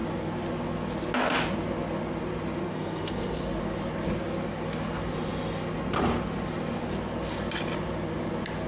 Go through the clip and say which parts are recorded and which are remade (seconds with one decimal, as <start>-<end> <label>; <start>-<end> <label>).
0.0-2.6 recorded; 2.6-3.4 remade; 3.4-8.7 recorded